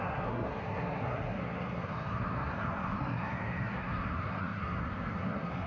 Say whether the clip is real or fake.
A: fake